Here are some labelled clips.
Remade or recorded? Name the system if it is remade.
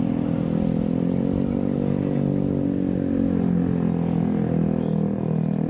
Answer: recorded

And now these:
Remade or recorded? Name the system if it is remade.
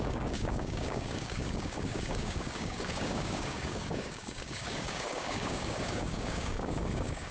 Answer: remade, codec, DAC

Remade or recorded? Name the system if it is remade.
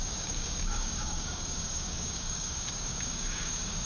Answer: remade, codec, DAC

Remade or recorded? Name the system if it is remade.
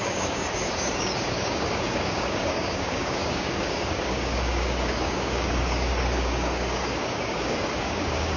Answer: remade, codec, DAC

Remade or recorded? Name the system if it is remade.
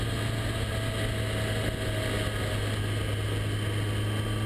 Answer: recorded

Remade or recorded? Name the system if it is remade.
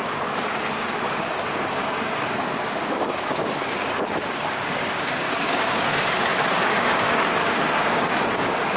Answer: remade, codec, DAC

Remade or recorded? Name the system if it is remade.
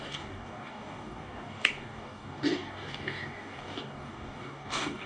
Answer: remade, codec, DAC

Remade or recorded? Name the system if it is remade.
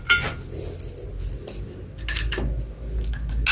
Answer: recorded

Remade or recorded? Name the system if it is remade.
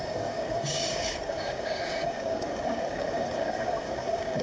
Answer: remade, codec, DAC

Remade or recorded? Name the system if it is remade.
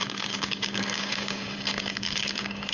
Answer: remade, codec, DAC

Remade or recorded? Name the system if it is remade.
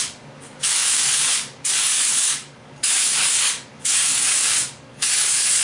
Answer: remade, codec, DAC